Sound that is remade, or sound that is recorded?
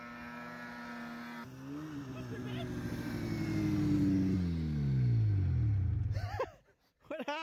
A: recorded